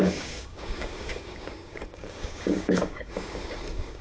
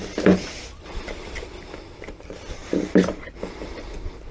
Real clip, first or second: second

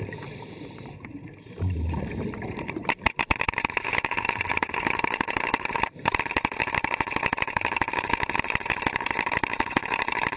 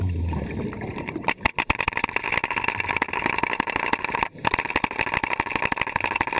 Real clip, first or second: second